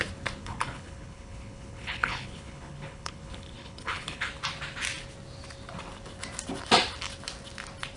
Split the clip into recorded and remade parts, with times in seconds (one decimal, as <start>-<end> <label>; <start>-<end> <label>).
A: 0.0-0.4 recorded; 0.4-4.3 remade; 4.3-8.0 recorded